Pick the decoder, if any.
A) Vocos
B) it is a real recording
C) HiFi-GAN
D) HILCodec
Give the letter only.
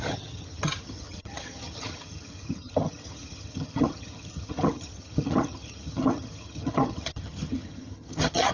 C